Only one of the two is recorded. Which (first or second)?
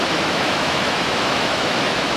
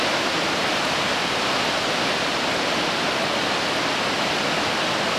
second